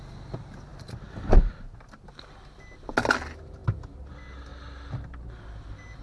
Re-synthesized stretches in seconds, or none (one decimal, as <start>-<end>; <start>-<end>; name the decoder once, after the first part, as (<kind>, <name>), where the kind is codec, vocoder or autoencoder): none